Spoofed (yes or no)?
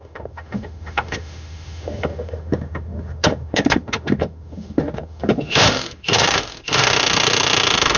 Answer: yes